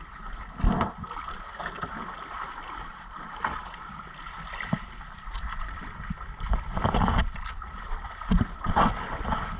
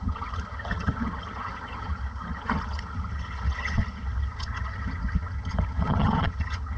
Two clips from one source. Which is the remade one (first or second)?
second